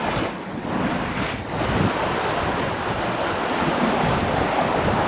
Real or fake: real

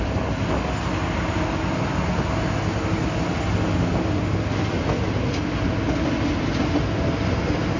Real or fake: real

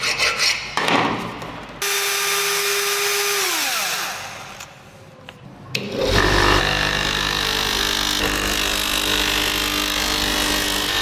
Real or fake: real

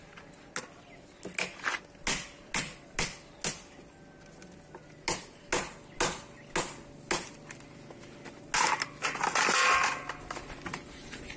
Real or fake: real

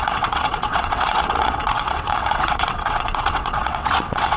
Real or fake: fake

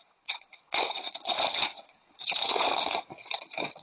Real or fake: fake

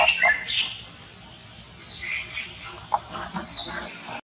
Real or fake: real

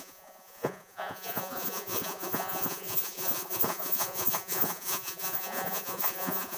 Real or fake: fake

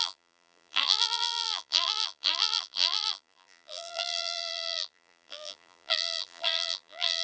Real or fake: fake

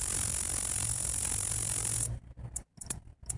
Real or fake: fake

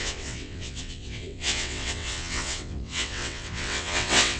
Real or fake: fake